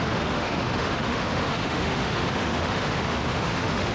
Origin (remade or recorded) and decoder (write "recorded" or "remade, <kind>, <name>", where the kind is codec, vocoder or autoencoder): remade, autoencoder, DAC-VAE